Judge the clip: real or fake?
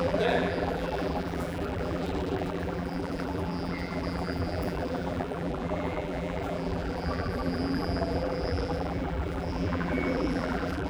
fake